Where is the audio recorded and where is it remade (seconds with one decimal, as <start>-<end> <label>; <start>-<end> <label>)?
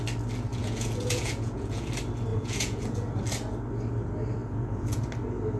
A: 0.0-0.5 recorded; 0.5-1.9 remade; 1.9-2.3 recorded; 2.3-3.2 remade; 3.2-4.4 recorded; 4.4-5.0 remade; 5.0-5.6 recorded